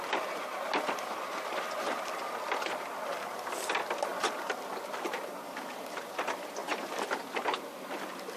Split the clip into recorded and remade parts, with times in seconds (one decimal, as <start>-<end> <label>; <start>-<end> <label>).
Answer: 0.0-8.4 recorded